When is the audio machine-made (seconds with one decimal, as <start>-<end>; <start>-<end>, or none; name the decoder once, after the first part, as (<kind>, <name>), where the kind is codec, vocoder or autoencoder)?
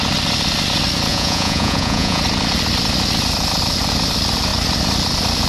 1.1-2.2 (vocoder, Vocos)